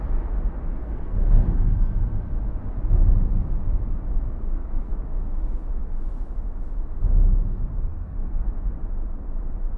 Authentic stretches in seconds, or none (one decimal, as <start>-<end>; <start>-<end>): 0.0-0.8; 2.0-4.1; 4.9-7.9; 8.5-9.8